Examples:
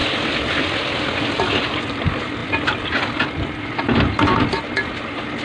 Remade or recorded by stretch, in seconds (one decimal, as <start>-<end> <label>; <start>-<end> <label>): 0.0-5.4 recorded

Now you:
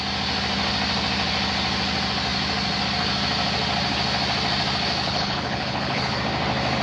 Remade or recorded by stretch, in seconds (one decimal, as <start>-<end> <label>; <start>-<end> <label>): 0.0-5.0 recorded; 5.0-6.2 remade; 6.2-6.8 recorded

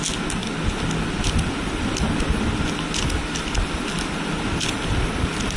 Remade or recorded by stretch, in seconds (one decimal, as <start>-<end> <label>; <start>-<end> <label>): 0.0-5.6 recorded

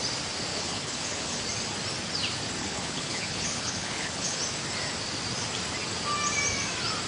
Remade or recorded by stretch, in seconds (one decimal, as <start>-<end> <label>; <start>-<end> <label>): 0.0-0.5 recorded; 0.5-1.4 remade; 1.4-2.6 recorded; 2.6-4.4 remade; 4.4-7.1 recorded

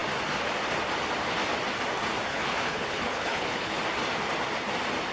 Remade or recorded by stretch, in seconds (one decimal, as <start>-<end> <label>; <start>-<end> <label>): 0.0-2.3 recorded; 2.3-3.8 remade; 3.8-5.1 recorded